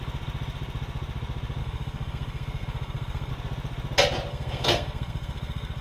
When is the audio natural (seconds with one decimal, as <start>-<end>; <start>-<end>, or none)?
0.0-1.6; 3.3-4.3